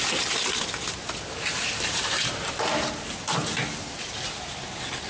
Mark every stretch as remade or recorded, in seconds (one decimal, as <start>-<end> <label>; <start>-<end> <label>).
0.0-1.6 recorded; 1.6-3.3 remade; 3.3-5.1 recorded